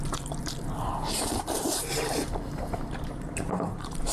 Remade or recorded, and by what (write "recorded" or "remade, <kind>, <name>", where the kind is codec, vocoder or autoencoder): remade, vocoder, BigVGAN v2